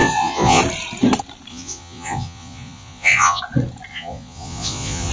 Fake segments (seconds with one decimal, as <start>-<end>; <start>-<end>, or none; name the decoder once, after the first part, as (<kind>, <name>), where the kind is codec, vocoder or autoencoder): 0.0-0.6 (vocoder, Vocos); 1.5-3.4; 3.9-5.1